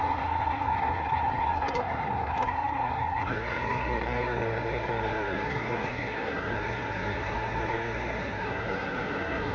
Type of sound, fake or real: fake